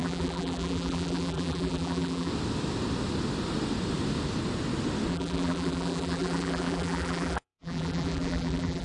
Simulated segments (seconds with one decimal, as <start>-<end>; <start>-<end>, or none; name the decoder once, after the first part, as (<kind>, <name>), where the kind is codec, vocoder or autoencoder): 0.0-2.3 (vocoder, BigVGAN v2); 5.1-8.8